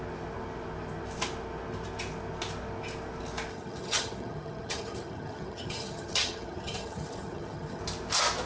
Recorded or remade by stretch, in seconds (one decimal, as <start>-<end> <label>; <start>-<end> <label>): 0.0-3.5 recorded; 3.5-7.8 remade; 7.8-8.5 recorded